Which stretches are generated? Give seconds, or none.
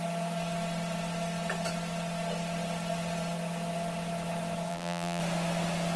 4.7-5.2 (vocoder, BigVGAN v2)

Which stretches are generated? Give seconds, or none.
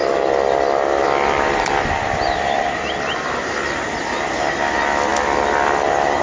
none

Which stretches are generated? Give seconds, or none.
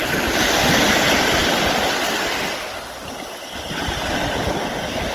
none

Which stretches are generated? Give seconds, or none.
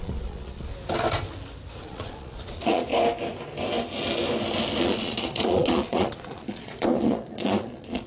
0.0-0.7 (vocoder, Vocos); 1.8-2.9; 4.8-8.1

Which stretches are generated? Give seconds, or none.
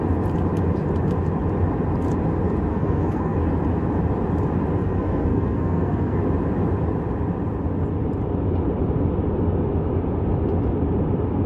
2.7-3.4 (codec, SNAC); 4.8-6.2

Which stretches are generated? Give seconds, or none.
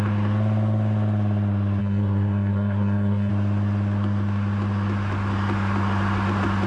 1.8-3.3 (codec, SNAC)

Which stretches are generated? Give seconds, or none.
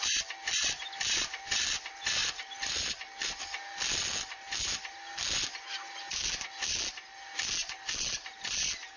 none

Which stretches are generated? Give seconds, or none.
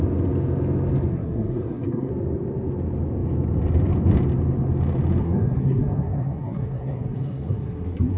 1.1-2.1 (codec, SNAC); 5.2-8.2